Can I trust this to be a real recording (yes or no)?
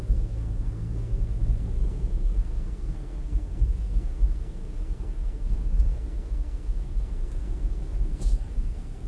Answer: no